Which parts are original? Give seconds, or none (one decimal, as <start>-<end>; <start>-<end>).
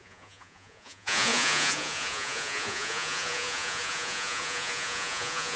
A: none